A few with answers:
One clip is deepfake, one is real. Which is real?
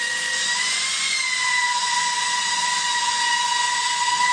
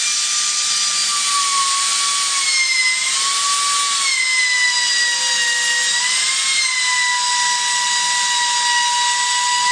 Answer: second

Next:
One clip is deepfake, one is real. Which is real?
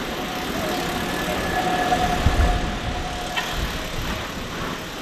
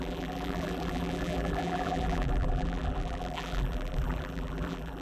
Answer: first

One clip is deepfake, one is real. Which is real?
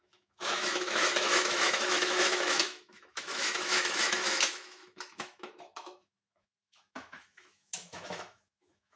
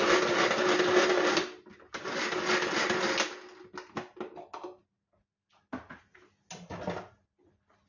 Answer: second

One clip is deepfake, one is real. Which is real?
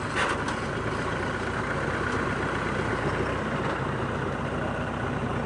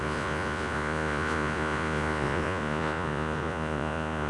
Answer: first